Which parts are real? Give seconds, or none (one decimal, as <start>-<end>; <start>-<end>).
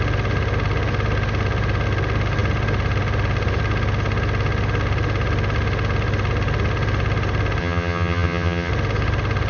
0.0-7.6; 8.7-9.5